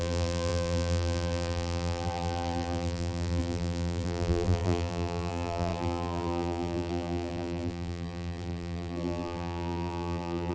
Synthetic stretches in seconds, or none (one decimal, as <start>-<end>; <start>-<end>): 0.0-10.5